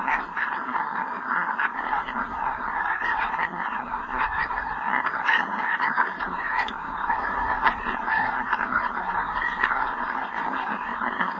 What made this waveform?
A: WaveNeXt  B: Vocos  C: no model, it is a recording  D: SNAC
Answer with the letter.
D